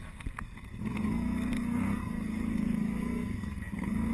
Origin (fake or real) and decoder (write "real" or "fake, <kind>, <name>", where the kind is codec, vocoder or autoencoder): fake, codec, SNAC